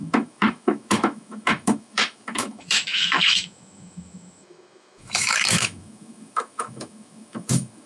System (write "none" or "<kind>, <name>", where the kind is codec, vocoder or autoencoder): autoencoder, DAC-VAE